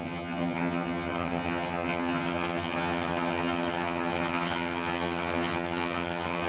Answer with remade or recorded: remade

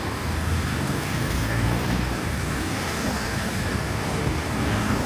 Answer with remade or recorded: remade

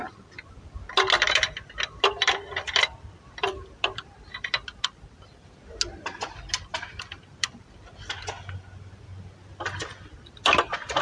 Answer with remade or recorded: recorded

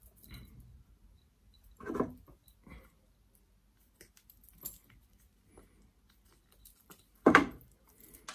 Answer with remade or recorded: recorded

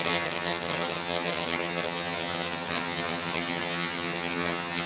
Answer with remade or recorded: remade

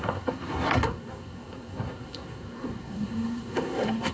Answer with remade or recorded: remade